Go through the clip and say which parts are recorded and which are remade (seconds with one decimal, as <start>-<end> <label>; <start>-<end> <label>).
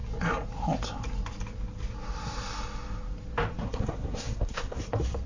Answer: 0.0-3.6 recorded; 3.6-4.8 remade; 4.8-5.3 recorded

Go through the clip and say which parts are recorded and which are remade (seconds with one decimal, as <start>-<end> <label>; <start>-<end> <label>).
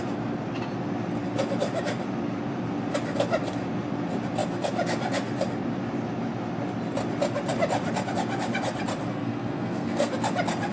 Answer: 0.0-9.1 recorded; 9.1-10.1 remade; 10.1-10.7 recorded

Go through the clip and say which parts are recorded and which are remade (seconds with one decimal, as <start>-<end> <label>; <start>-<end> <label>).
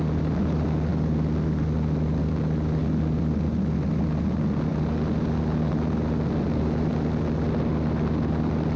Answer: 0.0-8.8 recorded